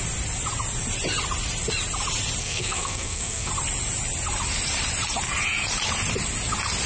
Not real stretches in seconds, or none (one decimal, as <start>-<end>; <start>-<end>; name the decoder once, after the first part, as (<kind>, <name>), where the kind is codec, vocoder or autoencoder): 2.4-3.5 (codec, SNAC)